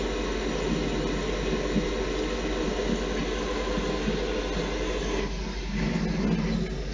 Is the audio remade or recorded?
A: recorded